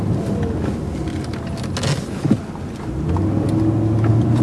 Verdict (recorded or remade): recorded